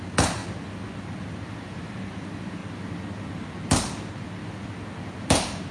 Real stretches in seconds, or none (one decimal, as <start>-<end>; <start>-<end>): 0.4-1.6; 2.6-5.2